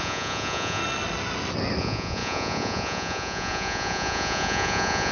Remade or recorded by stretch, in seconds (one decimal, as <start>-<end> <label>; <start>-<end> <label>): 0.0-0.8 remade; 0.8-1.8 recorded; 1.8-5.1 remade